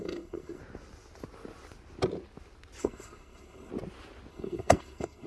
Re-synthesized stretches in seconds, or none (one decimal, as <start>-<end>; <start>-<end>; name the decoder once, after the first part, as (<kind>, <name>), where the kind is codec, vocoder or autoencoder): 0.0-0.6 (codec, SNAC); 2.8-3.7; 4.3-5.3